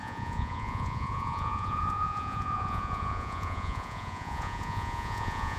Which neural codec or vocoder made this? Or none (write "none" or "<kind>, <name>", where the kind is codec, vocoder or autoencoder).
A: vocoder, Vocos